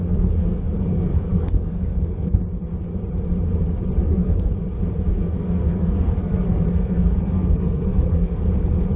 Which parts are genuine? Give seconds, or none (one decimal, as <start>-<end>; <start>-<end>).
2.4-4.0; 4.5-5.1; 8.4-9.0